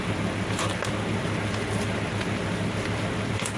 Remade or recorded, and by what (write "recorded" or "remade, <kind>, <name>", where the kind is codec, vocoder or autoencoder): recorded